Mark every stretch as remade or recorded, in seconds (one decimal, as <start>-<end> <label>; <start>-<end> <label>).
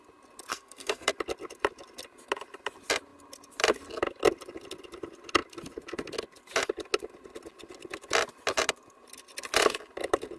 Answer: 0.0-0.5 recorded; 0.5-1.1 remade; 1.1-10.4 recorded